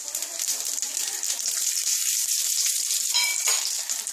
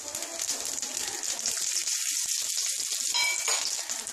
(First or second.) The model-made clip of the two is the first